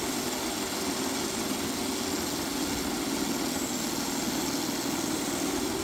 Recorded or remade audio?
recorded